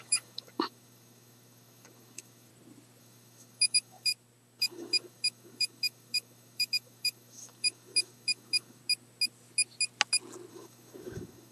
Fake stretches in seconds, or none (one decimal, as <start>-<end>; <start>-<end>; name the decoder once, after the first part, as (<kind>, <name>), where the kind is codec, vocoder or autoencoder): 0.0-2.5 (autoencoder, DAC-VAE); 3.0-4.1; 4.6-8.8; 10.5-11.5